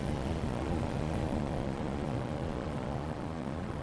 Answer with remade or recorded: remade